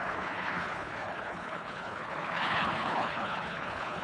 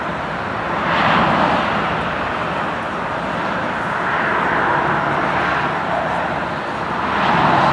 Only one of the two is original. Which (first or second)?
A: second